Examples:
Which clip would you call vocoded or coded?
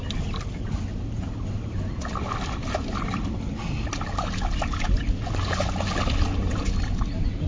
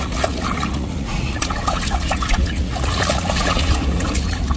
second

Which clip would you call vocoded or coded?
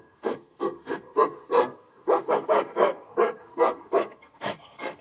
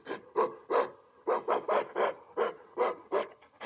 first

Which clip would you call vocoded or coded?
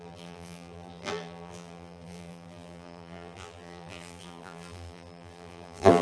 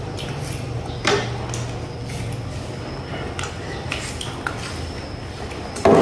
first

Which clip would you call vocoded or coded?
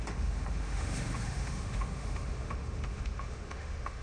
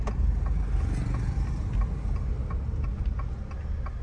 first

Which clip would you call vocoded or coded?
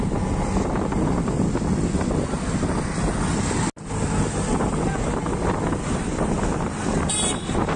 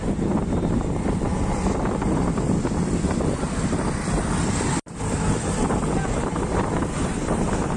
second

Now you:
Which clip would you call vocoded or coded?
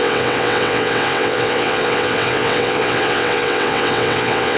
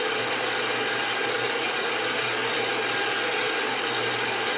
first